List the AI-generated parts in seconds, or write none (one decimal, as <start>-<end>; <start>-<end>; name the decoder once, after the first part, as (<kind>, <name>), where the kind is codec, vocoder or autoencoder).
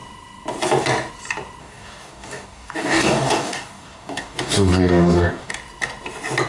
1.6-5.5 (codec, DAC)